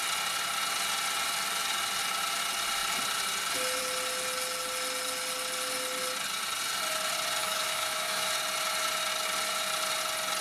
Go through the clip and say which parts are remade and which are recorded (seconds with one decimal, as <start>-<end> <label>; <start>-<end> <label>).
0.0-7.4 recorded; 7.4-8.3 remade; 8.3-10.4 recorded